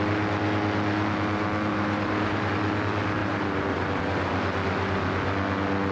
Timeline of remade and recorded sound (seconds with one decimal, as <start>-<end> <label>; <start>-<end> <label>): 0.0-1.7 recorded; 1.7-2.5 remade; 2.5-3.2 recorded; 3.2-4.0 remade; 4.0-5.9 recorded